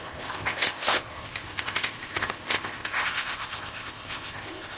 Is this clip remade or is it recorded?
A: remade